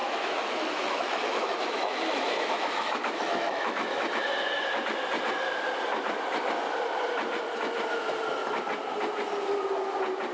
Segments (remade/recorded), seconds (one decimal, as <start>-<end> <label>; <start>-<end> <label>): 0.0-4.2 remade; 4.2-10.3 recorded